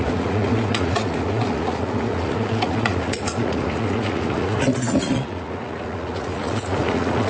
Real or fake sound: fake